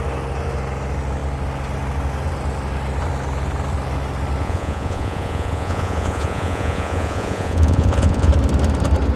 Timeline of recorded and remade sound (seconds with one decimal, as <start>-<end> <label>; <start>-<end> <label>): 0.0-4.4 recorded; 4.4-8.3 remade; 8.3-9.2 recorded